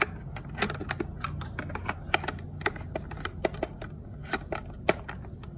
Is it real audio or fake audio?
real